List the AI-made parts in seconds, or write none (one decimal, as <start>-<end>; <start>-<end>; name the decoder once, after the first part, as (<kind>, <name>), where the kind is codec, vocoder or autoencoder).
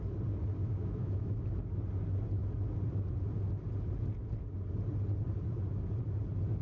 0.6-1.3 (autoencoder, DAC-VAE)